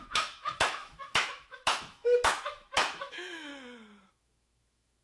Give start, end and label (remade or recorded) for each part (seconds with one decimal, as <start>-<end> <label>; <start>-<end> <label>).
0.0-3.5 remade; 3.5-4.1 recorded; 4.1-5.0 remade